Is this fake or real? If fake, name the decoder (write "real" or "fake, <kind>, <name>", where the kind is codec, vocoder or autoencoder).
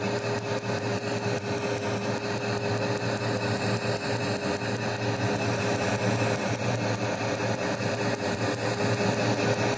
real